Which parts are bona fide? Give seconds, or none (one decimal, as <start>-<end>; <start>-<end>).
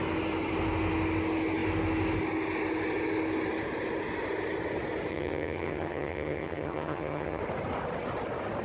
0.0-5.1; 7.4-8.6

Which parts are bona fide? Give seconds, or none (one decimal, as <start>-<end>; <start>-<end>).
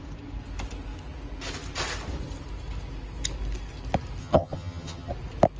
0.0-4.2; 5.1-5.6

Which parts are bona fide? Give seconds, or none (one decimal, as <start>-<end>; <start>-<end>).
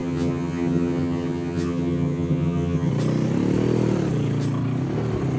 2.9-5.4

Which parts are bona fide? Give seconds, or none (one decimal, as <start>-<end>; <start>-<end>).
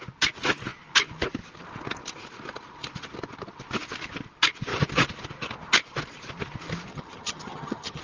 0.0-6.9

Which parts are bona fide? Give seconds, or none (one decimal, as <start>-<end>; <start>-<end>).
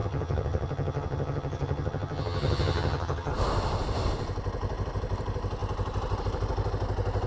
3.3-7.3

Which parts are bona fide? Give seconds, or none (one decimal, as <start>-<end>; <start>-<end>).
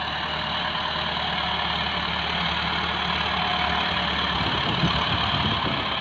0.0-6.0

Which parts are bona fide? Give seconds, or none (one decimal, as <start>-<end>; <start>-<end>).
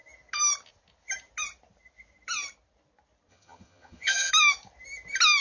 0.0-3.3; 4.3-5.4